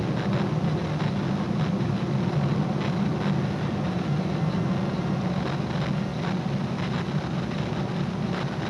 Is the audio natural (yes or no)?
yes